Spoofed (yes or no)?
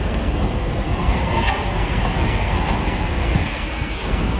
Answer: yes